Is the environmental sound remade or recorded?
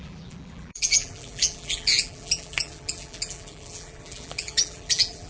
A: remade